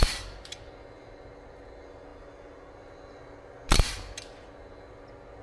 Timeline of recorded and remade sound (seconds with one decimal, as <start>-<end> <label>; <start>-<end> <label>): 0.0-5.4 recorded